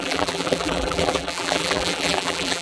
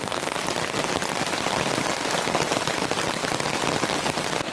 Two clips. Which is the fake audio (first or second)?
first